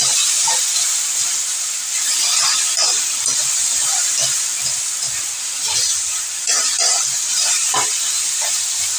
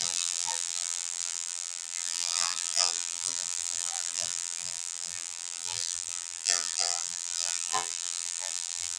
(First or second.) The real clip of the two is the first